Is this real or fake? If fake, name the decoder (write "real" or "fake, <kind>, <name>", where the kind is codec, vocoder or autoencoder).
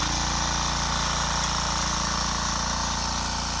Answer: real